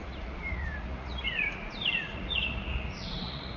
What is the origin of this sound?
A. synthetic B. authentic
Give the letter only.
A